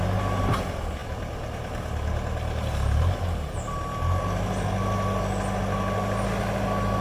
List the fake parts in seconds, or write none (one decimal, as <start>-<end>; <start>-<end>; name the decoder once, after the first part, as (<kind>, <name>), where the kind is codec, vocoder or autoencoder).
none